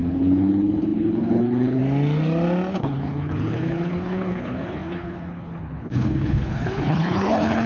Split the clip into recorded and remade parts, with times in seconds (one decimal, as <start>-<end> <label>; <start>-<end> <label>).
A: 0.0-1.8 remade; 1.8-2.7 recorded; 2.7-7.7 remade